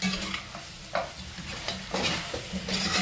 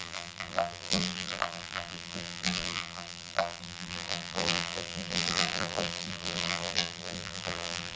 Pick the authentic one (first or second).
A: first